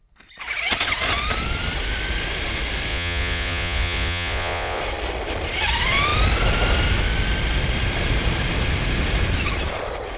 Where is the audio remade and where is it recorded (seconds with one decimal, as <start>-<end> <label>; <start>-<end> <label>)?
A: 0.0-2.9 recorded; 2.9-4.8 remade; 4.8-10.2 recorded